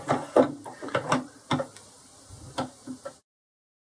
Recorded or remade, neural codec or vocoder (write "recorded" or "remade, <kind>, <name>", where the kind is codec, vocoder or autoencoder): recorded